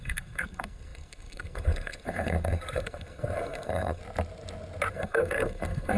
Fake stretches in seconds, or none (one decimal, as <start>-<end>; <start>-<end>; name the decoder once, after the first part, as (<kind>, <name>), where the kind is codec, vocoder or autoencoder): 0.0-4.0 (codec, SNAC); 4.9-6.0